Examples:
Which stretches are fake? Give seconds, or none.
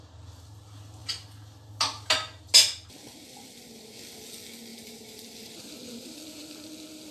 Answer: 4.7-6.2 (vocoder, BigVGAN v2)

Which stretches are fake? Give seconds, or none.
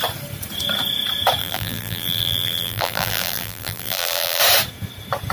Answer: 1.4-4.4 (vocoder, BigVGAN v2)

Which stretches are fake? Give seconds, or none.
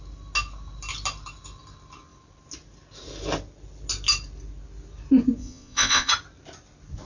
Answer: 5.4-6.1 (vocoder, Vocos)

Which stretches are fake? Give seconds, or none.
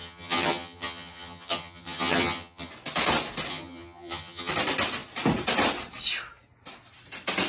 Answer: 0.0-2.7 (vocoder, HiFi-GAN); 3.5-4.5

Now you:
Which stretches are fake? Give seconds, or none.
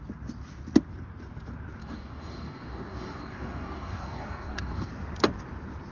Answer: 1.8-4.9 (codec, DAC)